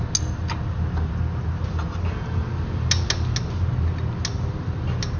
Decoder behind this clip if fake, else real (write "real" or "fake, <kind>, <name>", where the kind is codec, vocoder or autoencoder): real